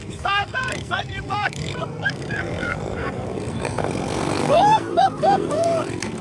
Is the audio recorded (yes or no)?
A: no